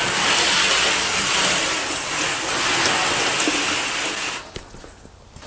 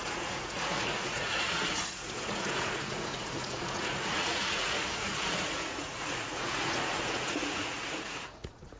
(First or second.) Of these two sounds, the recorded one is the first